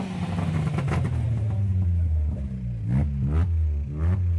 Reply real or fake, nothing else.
real